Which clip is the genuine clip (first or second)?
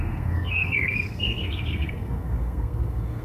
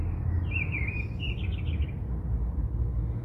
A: second